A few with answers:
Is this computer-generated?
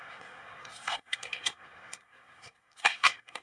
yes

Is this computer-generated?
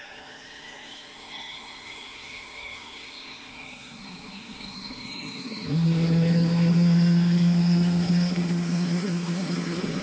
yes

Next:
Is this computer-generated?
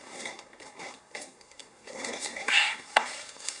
yes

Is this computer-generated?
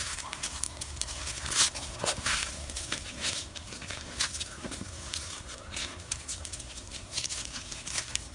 yes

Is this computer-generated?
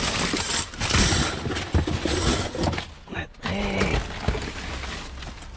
no